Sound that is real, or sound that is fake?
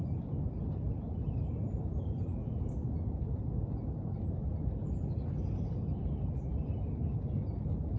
real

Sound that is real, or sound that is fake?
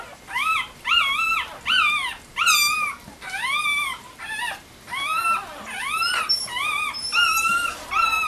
real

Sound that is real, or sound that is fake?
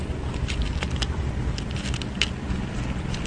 real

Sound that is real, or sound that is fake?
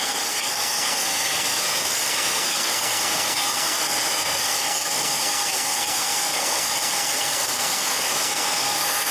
fake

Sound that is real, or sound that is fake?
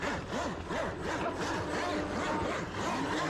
real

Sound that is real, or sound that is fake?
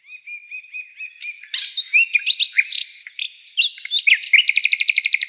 real